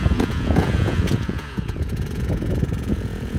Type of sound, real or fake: fake